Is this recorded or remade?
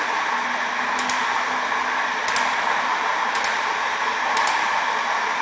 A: recorded